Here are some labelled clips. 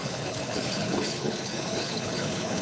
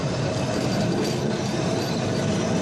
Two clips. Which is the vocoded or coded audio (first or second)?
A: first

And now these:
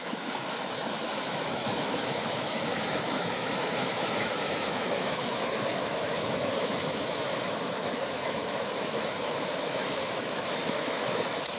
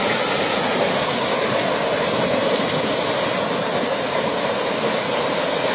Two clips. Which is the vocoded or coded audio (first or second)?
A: first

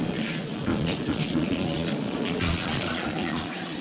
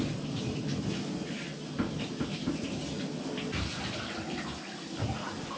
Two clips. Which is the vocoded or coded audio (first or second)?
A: first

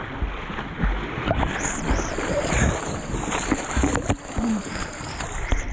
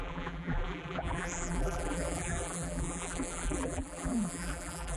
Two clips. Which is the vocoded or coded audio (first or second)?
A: second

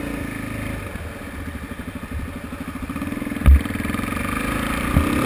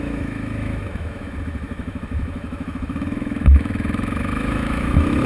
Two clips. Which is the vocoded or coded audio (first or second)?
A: second